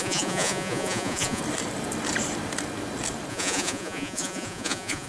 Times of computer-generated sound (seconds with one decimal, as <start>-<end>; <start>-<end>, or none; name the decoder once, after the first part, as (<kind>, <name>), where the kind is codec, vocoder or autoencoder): 0.0-1.4 (vocoder, Vocos); 3.3-5.1